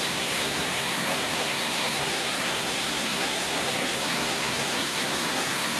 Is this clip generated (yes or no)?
yes